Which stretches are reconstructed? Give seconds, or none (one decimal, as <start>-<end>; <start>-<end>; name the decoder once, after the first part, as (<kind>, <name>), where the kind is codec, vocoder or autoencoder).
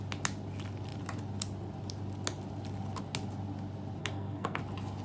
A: 4.0-4.6 (codec, SNAC)